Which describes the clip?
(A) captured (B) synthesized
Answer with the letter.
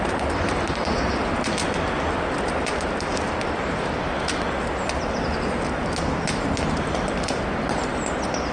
A